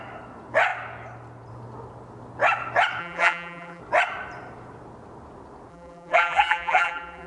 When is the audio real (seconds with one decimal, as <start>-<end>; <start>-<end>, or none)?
0.0-3.0; 3.8-5.7